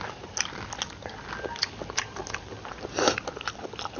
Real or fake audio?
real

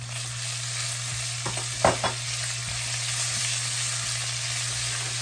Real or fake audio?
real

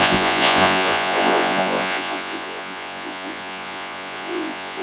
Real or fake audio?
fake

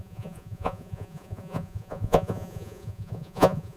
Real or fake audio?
fake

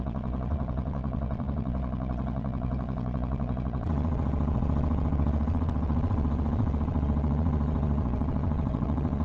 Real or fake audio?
fake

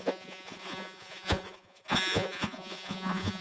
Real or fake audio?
fake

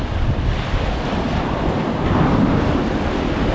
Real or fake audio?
real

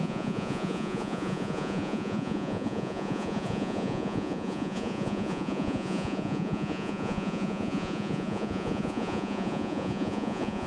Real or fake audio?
fake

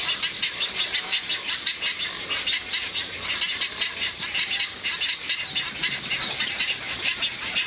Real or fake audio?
real